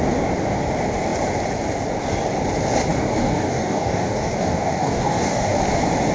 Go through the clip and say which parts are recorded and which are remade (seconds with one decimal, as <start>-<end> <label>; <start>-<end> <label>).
0.0-2.9 recorded; 2.9-5.6 remade; 5.6-6.1 recorded